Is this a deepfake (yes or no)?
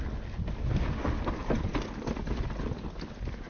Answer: no